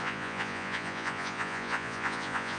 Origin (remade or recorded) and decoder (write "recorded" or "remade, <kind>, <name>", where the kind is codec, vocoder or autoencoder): remade, vocoder, Vocos